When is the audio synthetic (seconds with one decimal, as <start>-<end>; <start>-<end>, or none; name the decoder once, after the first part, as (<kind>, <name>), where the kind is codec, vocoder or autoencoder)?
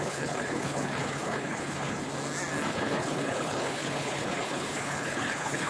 0.0-2.1 (codec, HILCodec); 2.7-5.7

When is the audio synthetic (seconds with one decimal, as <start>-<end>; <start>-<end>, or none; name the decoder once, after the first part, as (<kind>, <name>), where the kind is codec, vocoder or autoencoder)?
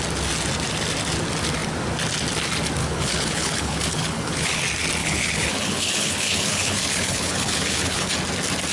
2.8-4.6 (codec, HILCodec); 5.0-8.1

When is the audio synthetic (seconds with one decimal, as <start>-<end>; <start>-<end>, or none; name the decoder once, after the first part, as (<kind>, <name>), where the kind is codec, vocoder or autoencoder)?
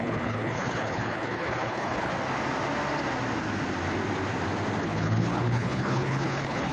0.0-2.1 (codec, HILCodec); 4.8-6.7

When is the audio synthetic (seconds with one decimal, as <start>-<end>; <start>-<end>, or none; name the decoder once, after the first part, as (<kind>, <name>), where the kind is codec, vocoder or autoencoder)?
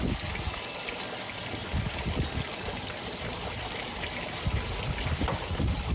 none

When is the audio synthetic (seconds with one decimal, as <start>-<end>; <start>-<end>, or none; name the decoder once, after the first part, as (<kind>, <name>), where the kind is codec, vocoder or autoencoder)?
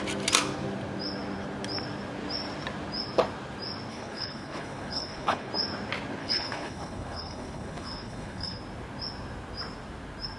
3.9-5.5 (codec, HILCodec); 6.2-8.6